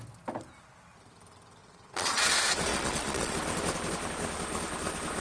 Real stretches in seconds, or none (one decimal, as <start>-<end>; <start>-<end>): 0.0-1.6; 2.2-2.7; 3.3-5.2